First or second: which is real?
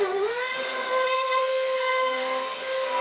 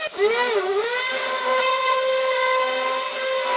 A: second